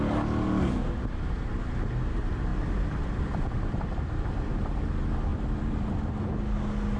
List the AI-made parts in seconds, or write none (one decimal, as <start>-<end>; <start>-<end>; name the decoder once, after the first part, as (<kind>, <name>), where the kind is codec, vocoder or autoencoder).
2.5-4.8 (vocoder, BigVGAN v2); 5.3-6.1